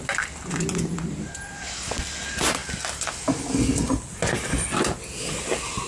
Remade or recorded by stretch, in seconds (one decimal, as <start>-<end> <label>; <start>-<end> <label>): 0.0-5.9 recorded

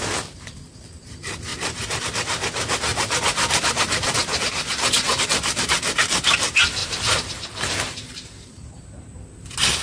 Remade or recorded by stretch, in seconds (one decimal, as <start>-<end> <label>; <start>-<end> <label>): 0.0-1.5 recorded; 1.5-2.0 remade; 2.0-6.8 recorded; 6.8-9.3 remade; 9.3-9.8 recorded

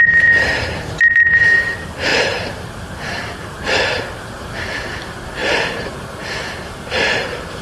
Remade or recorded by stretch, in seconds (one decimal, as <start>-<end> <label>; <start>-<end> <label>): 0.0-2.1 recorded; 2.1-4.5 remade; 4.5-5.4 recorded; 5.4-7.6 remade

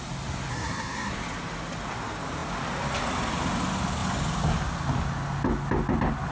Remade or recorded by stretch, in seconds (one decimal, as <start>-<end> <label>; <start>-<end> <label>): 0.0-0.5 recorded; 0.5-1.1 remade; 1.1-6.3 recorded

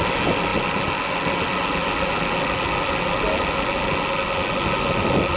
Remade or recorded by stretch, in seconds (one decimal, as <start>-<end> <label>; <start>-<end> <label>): 0.0-5.4 recorded

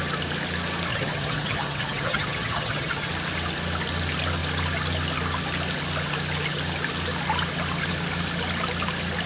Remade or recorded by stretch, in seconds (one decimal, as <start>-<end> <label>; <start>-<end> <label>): 0.0-0.9 recorded; 0.9-3.1 remade; 3.1-9.3 recorded

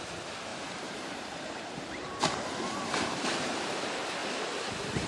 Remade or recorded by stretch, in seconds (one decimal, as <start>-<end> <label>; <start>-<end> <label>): 0.0-0.5 recorded; 0.5-3.6 remade; 3.6-5.1 recorded